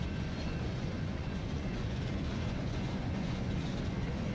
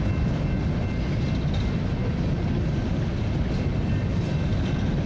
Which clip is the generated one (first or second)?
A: first